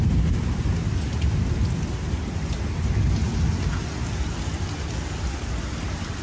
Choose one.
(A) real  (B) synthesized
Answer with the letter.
A